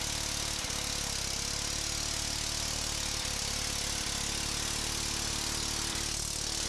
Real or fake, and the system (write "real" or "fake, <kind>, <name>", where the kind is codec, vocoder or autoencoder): real